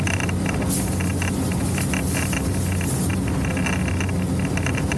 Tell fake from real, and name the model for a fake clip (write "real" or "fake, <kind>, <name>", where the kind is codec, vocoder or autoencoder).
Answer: real